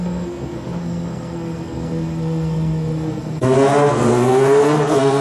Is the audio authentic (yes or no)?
no